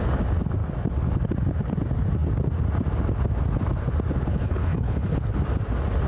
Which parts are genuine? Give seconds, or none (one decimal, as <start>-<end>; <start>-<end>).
0.0-4.3; 5.3-6.1